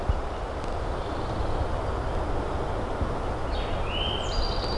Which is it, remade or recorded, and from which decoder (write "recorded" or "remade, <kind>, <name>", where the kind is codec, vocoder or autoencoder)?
recorded